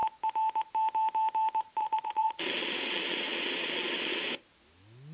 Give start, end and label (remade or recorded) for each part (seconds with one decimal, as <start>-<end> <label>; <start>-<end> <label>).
0.0-1.8 recorded; 1.8-4.3 remade; 4.3-5.1 recorded